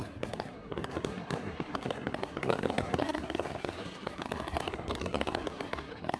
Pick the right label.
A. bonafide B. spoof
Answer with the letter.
B